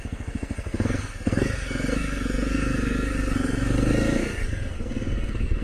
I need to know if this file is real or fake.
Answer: fake